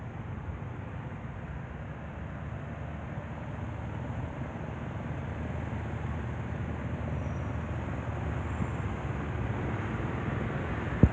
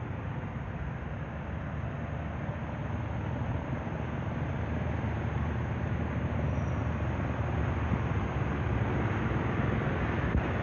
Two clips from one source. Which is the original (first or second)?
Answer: first